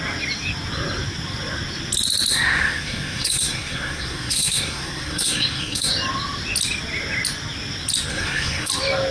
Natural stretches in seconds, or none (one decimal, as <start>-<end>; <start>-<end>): 0.0-2.3; 5.9-8.1; 8.7-9.1